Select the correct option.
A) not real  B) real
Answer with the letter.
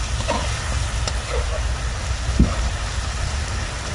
B